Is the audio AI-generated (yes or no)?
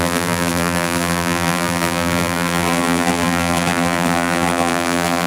yes